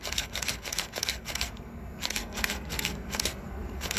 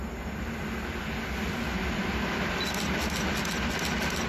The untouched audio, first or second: second